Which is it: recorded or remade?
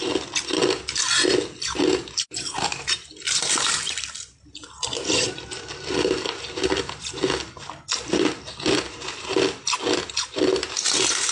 recorded